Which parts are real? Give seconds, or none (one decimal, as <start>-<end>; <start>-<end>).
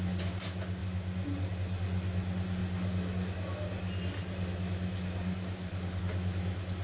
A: 0.0-6.8